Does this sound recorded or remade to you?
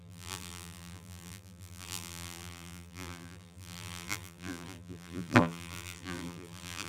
remade